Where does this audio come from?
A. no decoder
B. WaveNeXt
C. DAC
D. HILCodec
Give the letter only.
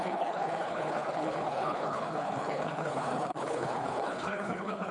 D